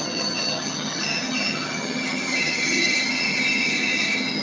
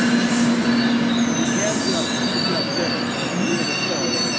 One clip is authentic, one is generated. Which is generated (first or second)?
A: first